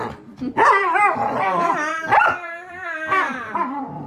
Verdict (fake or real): fake